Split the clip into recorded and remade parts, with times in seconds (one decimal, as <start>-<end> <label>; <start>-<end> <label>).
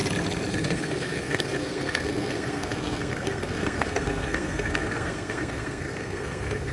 0.0-0.5 recorded; 0.5-6.7 remade